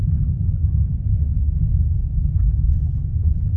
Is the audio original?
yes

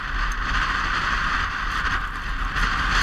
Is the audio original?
yes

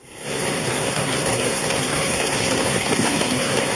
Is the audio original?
no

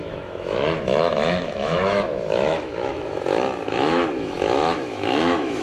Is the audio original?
no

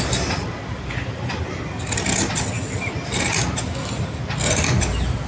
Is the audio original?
yes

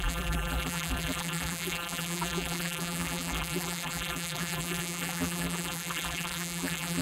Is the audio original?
no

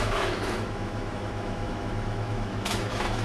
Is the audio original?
no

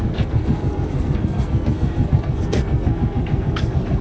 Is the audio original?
no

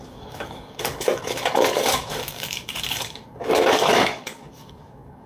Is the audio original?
no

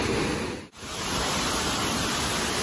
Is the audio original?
yes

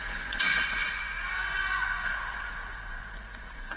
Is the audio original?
no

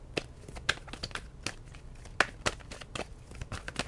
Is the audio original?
yes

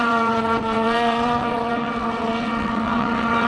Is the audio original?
no